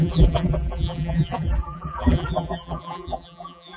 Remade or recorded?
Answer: remade